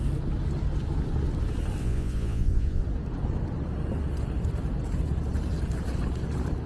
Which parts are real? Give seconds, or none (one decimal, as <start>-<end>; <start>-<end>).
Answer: 0.0-1.8; 2.8-6.7